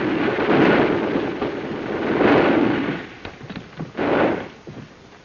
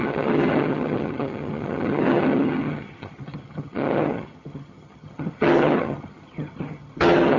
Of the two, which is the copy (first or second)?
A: second